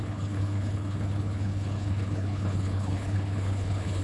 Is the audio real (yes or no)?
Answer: no